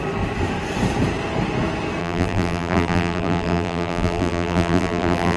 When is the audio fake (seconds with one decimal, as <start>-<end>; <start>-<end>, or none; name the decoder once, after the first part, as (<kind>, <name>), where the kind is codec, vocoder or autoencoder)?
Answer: 2.0-5.4 (vocoder, BigVGAN v2)